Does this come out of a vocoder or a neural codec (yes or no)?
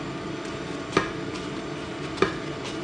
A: no